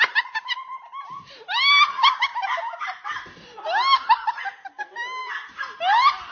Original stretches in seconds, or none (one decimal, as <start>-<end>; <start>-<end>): 0.0-2.3; 4.1-5.2